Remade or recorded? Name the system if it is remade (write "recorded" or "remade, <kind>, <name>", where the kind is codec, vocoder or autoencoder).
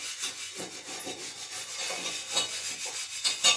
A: remade, vocoder, Vocos